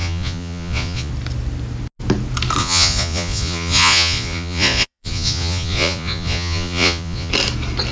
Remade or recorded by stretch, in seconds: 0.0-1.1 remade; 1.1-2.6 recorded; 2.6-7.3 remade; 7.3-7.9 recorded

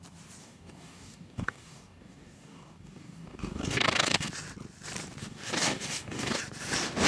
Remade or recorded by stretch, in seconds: 0.0-0.4 recorded; 0.4-4.3 remade; 4.3-5.2 recorded; 5.2-6.4 remade; 6.4-7.1 recorded

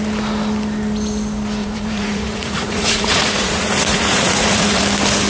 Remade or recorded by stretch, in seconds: 0.0-1.6 recorded; 1.6-4.8 remade; 4.8-5.3 recorded

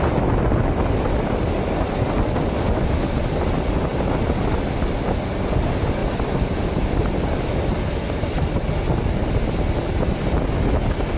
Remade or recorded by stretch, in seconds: 0.0-11.2 recorded

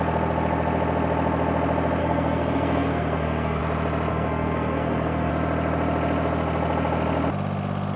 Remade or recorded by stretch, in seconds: 0.0-2.0 recorded; 2.0-3.6 remade; 3.6-4.1 recorded; 4.1-5.3 remade; 5.3-8.0 recorded